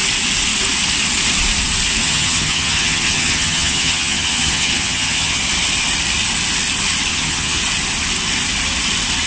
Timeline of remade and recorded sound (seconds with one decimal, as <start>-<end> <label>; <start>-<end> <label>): 0.0-2.0 recorded; 2.0-5.4 remade; 5.4-7.1 recorded; 7.1-7.6 remade; 7.6-9.3 recorded